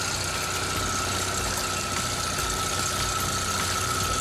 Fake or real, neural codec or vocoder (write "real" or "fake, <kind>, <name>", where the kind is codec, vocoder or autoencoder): real